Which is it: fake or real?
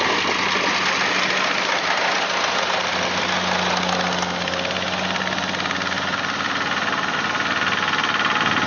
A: real